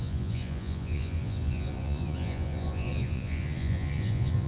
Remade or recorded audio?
remade